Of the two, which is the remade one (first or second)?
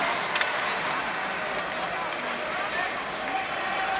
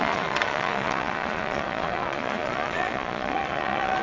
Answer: second